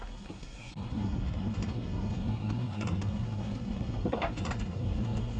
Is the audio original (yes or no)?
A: no